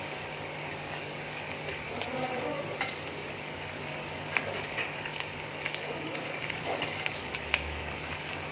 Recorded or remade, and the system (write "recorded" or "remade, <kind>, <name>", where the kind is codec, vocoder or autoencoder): remade, codec, DAC